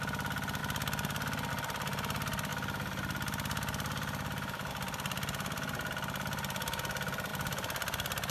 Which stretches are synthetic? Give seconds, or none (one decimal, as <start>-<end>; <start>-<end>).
2.5-4.7; 7.3-8.3